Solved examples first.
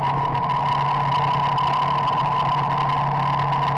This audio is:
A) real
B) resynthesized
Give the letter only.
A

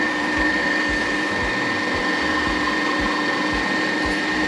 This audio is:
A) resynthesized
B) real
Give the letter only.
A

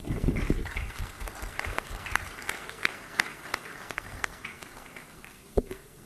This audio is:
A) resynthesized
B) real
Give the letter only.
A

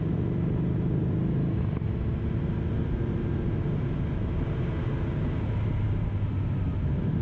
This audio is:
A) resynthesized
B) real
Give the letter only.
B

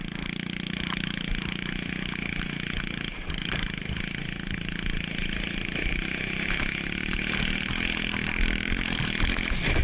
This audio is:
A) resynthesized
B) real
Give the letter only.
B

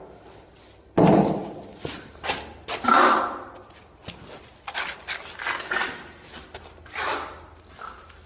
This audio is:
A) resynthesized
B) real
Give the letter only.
B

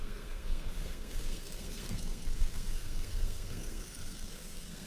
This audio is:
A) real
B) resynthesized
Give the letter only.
B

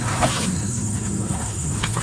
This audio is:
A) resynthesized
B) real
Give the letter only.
A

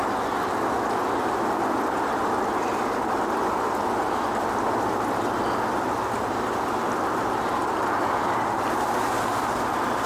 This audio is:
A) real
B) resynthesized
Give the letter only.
A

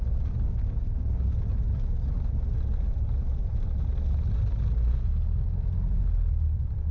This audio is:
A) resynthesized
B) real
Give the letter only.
B